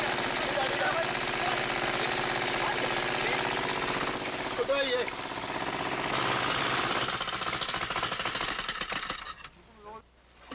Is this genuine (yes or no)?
yes